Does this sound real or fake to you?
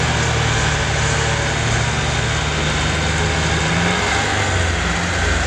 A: real